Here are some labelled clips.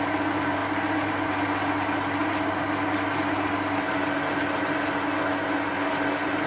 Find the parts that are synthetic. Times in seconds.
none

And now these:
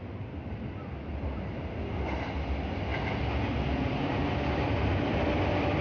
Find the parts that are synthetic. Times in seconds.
none

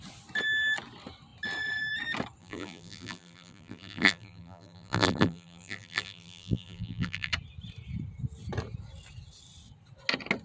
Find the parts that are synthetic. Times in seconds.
2.4-7.3 (vocoder, BigVGAN v2)

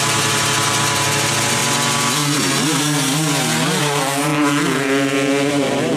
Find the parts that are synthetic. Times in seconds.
0.0-1.6 (vocoder, BigVGAN v2); 3.8-4.3; 5.5-6.0

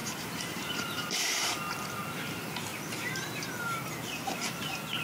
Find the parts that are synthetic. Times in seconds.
0.0-1.6 (vocoder, BigVGAN v2); 2.7-3.5